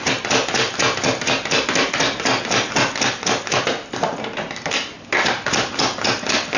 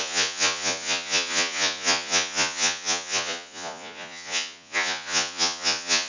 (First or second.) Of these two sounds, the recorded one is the first